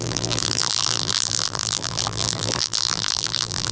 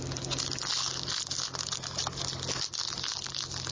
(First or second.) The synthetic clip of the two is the first